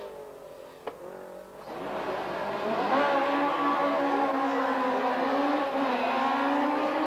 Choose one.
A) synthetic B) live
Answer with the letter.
B